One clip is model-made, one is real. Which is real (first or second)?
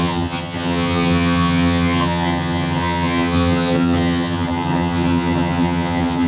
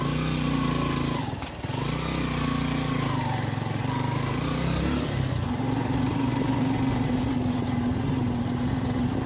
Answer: second